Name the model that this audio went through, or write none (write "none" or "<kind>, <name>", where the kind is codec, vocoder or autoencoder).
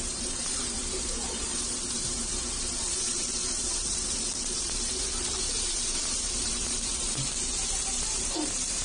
vocoder, BigVGAN v2